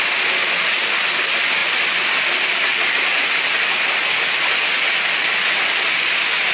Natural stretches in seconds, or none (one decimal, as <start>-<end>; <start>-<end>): 0.0-6.5

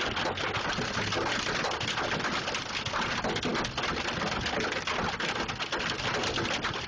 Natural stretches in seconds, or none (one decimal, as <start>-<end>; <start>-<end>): 0.0-6.9

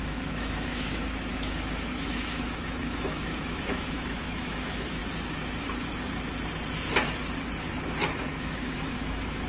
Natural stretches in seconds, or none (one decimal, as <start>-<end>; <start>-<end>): 5.0-8.4

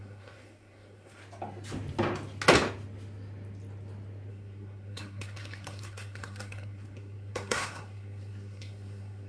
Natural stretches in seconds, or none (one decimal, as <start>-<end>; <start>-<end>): 1.2-4.3

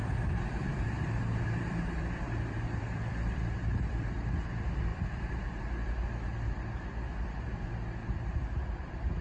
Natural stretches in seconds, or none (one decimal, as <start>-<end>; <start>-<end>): 0.0-0.7; 4.3-4.9; 5.4-8.0

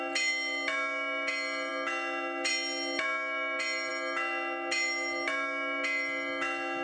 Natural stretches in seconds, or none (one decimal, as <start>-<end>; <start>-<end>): 0.0-6.8

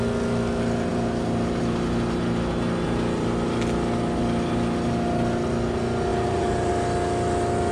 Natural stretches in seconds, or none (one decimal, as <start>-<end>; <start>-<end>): 0.0-0.9; 1.6-6.1; 6.7-7.7

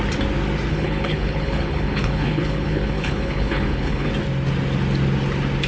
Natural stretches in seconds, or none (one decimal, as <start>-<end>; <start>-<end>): 0.0-0.7; 4.1-5.7